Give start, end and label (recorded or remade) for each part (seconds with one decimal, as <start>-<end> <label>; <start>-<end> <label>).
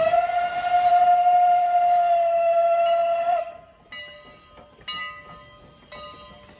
0.0-6.6 recorded